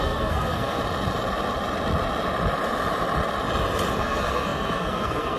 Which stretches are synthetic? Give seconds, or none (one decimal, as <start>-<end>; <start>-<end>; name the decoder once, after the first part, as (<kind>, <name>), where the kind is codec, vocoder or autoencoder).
0.0-0.8 (codec, SNAC); 4.0-5.4